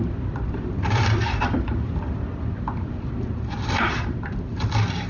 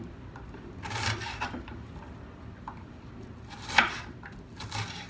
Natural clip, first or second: second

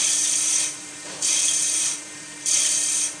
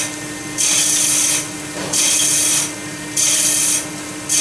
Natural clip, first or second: second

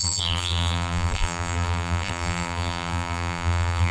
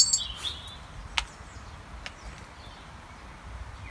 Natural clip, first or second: second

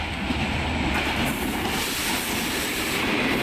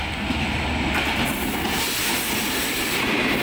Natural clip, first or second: second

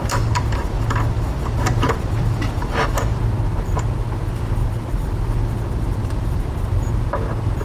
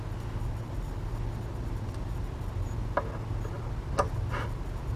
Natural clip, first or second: second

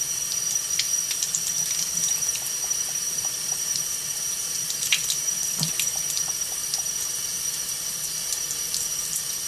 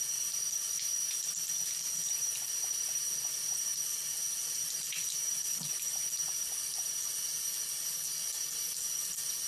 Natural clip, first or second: second